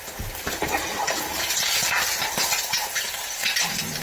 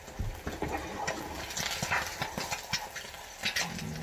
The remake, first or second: first